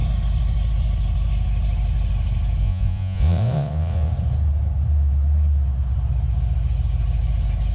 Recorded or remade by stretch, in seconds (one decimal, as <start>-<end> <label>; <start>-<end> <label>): 0.0-2.6 recorded; 2.6-4.1 remade; 4.1-7.7 recorded